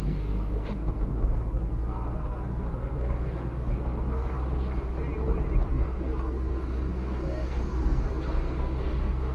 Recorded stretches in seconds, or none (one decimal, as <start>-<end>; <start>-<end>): 4.9-5.7